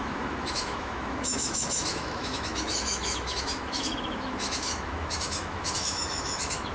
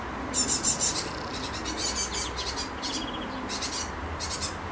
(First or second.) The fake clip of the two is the first